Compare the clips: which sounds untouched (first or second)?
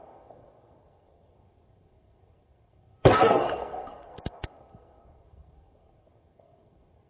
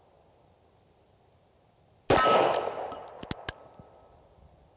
second